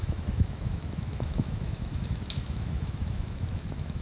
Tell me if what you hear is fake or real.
fake